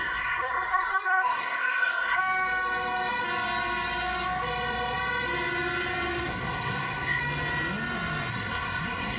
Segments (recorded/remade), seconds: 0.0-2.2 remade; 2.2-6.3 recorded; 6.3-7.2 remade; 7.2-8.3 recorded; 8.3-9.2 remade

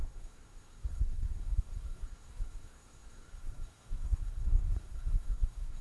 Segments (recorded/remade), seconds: 0.0-5.8 remade

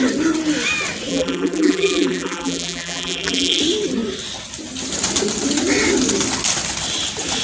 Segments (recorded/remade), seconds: 0.0-1.1 recorded; 1.1-3.6 remade; 3.6-7.4 recorded

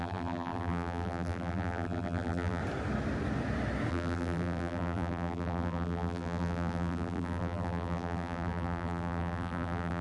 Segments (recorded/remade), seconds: 0.0-2.6 remade; 2.6-3.9 recorded; 3.9-10.0 remade

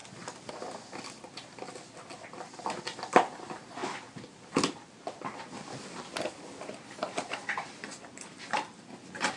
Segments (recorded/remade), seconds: 0.0-0.5 remade; 0.5-9.4 recorded

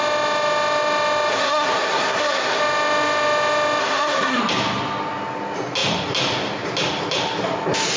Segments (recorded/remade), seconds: 0.0-1.3 recorded; 1.3-2.6 remade; 2.6-3.8 recorded; 3.8-4.4 remade; 4.4-8.0 recorded

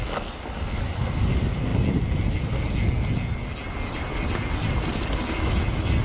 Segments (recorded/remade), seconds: 0.0-6.0 recorded